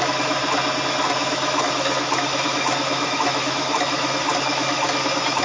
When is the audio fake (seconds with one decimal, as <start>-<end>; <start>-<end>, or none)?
0.0-0.4; 0.9-5.4